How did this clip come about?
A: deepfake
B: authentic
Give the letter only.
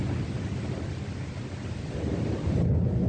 B